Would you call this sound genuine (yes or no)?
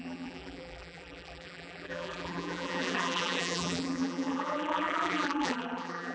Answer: no